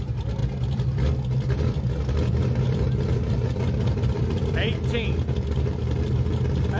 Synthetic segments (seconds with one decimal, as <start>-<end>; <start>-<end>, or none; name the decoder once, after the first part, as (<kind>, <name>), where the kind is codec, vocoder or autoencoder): none